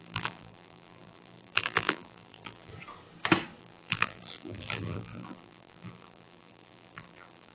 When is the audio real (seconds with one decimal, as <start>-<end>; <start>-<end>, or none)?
2.7-3.6